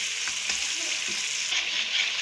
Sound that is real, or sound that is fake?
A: real